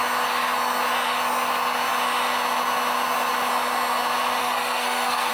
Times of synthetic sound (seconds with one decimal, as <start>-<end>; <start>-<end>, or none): 4.4-5.3